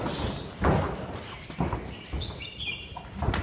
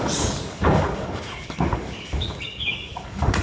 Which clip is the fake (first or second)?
second